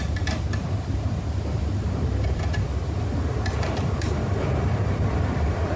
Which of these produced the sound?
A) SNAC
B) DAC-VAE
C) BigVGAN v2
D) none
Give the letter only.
C